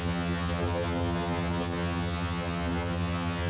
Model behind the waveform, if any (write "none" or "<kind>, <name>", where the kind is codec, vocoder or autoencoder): vocoder, HiFi-GAN